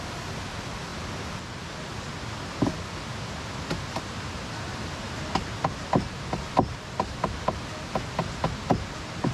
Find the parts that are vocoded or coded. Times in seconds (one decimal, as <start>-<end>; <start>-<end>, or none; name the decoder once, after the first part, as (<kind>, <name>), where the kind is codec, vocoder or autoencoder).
none